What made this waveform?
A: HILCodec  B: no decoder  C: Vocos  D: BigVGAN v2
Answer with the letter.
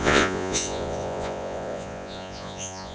C